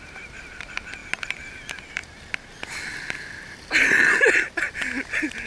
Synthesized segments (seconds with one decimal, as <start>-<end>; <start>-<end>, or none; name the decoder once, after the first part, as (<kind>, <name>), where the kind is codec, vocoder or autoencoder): none